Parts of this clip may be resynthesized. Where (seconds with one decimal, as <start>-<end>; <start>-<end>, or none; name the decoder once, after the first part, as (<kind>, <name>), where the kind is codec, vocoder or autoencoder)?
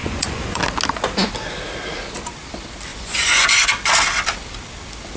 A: 0.0-0.6 (vocoder, Vocos); 2.9-3.7